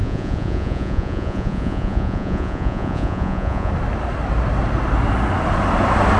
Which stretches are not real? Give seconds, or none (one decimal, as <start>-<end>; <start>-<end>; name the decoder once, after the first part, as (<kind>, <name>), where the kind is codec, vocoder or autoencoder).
0.0-3.7 (vocoder, Vocos)